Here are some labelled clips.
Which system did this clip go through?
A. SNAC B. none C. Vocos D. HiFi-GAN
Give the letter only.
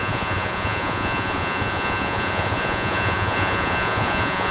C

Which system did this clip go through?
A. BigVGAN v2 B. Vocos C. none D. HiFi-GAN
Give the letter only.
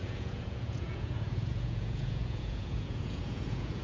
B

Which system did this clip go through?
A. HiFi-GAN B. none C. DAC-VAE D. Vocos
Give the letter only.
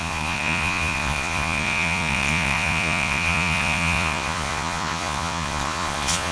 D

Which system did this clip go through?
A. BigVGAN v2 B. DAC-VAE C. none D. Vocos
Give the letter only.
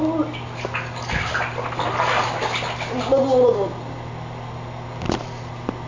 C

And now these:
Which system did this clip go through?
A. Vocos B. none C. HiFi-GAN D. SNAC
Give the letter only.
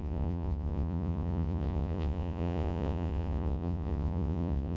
A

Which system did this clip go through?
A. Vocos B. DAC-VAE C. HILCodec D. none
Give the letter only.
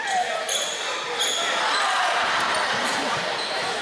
D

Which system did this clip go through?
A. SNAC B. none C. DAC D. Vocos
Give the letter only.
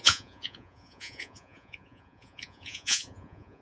D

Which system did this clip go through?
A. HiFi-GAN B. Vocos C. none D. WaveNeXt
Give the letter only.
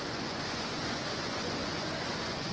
B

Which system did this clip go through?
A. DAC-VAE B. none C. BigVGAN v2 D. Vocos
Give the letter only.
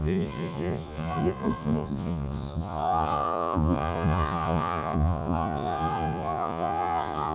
D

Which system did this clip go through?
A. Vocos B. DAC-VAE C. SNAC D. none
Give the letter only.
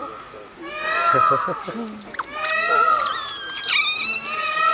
D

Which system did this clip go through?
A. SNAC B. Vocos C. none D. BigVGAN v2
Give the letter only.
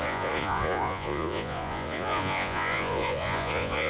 B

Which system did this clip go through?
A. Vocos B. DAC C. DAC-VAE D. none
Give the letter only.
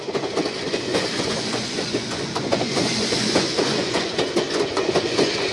A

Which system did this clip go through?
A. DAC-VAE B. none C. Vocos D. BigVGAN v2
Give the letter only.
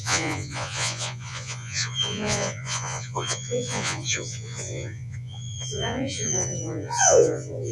C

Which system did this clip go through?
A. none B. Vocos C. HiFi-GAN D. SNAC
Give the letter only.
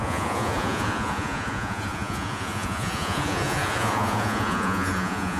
B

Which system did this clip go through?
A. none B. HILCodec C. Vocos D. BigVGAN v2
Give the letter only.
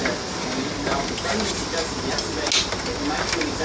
A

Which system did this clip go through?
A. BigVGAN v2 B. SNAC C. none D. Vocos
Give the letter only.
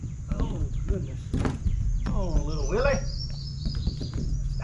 D